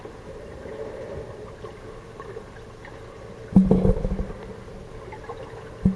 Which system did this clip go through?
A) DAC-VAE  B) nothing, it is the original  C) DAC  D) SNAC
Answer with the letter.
B